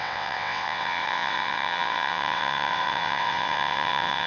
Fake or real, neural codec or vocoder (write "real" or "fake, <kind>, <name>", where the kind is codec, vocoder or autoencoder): fake, vocoder, WaveNeXt